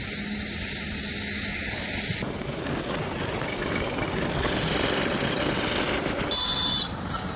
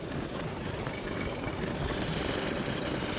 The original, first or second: first